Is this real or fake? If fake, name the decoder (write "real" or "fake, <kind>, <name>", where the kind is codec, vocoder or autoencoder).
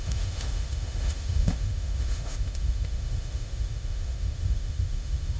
fake, autoencoder, DAC-VAE